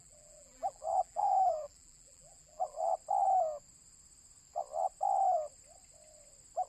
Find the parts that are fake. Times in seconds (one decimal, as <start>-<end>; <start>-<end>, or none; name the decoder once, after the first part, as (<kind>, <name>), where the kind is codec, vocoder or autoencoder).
0.0-2.9 (vocoder, BigVGAN v2)